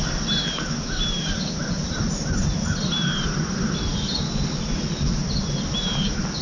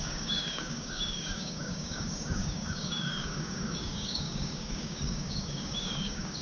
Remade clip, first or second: second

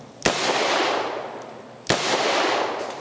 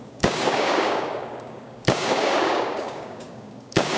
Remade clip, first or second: second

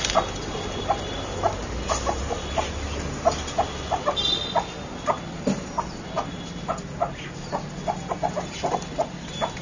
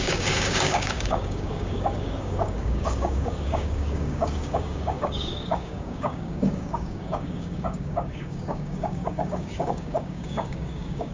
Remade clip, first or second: second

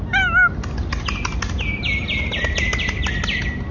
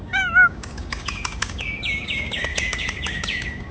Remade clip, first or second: second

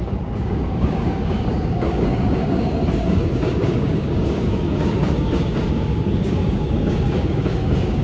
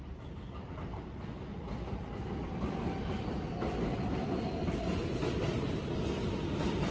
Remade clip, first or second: first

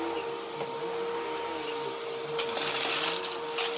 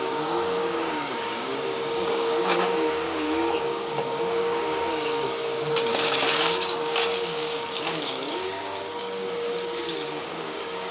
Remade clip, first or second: second